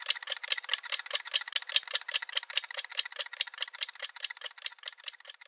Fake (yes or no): no